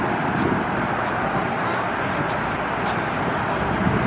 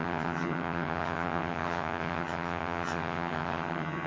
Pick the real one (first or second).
first